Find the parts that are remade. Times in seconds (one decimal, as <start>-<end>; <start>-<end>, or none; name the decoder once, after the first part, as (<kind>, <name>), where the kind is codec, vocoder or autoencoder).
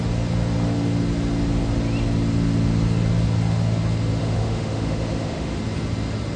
4.2-5.6 (autoencoder, DAC-VAE)